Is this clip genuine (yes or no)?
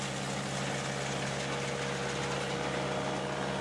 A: yes